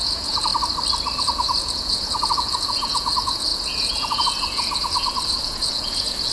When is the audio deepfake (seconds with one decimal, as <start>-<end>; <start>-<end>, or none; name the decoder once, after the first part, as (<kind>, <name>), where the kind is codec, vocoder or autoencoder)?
0.0-0.5 (vocoder, Vocos); 1.2-6.3